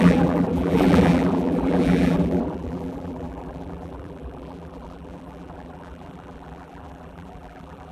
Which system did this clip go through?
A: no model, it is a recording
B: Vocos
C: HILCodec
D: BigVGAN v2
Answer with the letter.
D